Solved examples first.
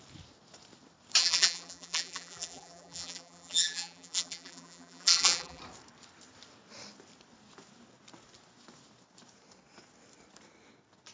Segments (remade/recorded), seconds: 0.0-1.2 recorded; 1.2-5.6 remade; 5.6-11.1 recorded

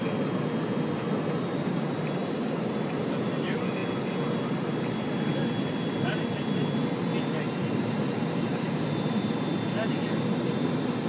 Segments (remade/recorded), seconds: 0.0-7.6 recorded; 7.6-9.3 remade; 9.3-11.1 recorded

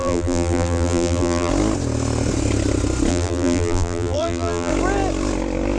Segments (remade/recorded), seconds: 0.0-1.5 remade; 1.5-3.1 recorded; 3.1-4.7 remade; 4.7-5.8 recorded